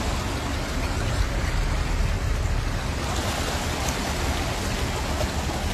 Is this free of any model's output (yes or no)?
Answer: yes